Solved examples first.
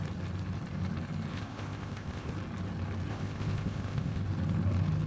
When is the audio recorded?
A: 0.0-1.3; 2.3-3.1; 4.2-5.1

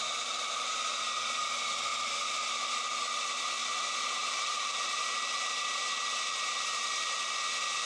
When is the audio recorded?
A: 0.7-3.6; 6.0-7.9

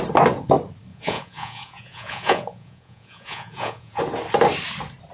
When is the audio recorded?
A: 0.0-0.9; 4.0-5.1